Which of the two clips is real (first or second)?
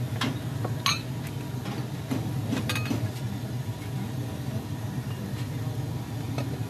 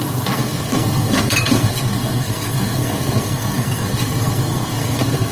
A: first